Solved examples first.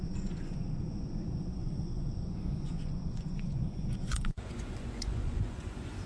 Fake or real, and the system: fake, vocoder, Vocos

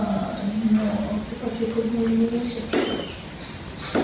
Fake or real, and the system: real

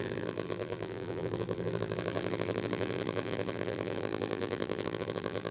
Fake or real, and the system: fake, vocoder, BigVGAN v2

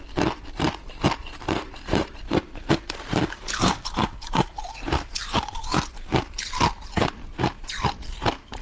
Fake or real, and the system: fake, vocoder, BigVGAN v2